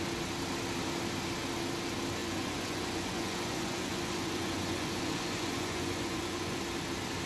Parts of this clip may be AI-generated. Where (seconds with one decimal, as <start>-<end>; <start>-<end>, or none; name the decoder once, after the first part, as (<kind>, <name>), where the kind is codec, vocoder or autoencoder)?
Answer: 2.2-6.6 (vocoder, Vocos)